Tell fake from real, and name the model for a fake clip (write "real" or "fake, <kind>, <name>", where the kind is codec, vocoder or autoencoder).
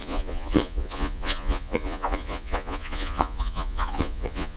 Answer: fake, vocoder, Vocos